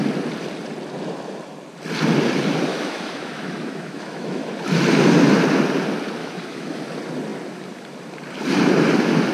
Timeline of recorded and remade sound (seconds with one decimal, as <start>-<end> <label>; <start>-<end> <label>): 0.0-2.7 recorded; 2.7-4.5 remade; 4.5-6.2 recorded; 6.2-6.8 remade; 6.8-9.3 recorded

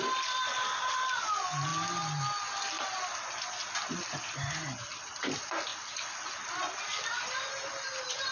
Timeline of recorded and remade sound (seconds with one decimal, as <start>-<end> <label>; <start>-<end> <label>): 0.0-8.3 recorded

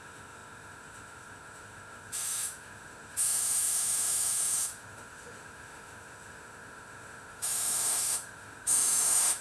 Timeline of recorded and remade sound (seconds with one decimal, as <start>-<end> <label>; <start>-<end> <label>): 0.0-9.4 remade

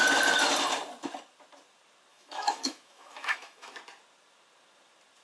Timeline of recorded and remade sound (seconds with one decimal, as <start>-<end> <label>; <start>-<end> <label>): 0.0-2.1 recorded; 2.1-3.7 remade; 3.7-5.2 recorded

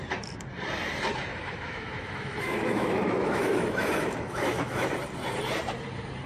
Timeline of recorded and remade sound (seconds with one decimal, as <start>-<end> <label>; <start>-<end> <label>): 0.0-1.3 recorded; 1.3-4.9 remade; 4.9-6.3 recorded

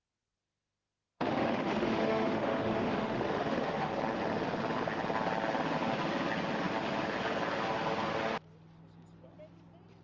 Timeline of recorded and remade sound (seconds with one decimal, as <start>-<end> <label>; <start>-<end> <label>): 0.0-0.4 recorded; 0.4-3.9 remade; 3.9-10.0 recorded

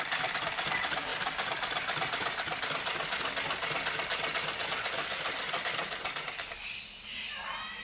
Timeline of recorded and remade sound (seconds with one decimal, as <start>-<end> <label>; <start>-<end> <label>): 0.0-7.8 recorded